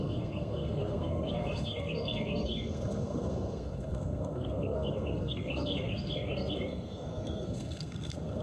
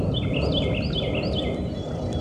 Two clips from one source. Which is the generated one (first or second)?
first